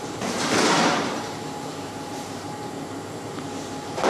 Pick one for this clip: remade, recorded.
remade